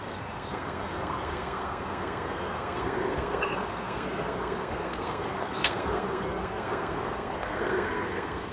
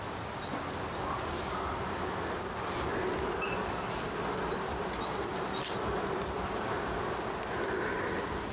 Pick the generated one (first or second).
first